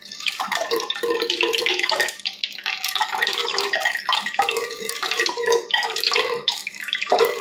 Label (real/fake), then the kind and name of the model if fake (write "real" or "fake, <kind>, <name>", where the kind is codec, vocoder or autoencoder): fake, codec, DAC